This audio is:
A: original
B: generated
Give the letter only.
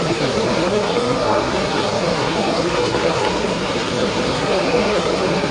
B